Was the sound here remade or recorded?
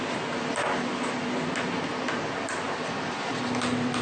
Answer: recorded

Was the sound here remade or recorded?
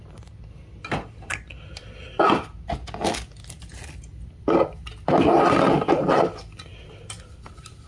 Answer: recorded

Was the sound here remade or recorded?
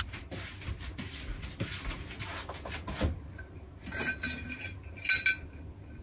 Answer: recorded